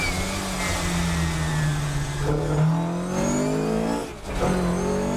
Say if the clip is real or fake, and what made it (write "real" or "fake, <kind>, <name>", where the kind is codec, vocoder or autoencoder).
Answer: real